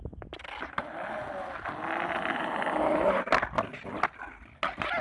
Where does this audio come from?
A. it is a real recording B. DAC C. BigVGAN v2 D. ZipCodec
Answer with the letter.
A